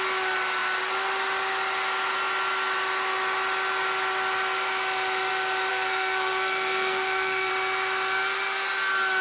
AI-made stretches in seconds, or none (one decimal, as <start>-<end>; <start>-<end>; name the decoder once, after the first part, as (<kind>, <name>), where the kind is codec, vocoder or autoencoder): 5.7-7.5 (codec, SNAC)